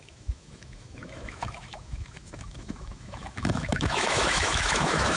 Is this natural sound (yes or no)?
no